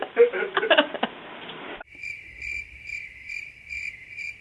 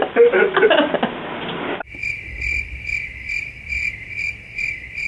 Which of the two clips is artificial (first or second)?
first